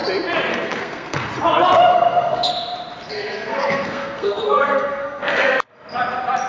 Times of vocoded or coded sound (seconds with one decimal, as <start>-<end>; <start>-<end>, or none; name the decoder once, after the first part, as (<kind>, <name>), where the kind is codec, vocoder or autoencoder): 0.5-1.3 (codec, SNAC); 1.9-2.5; 3.1-5.5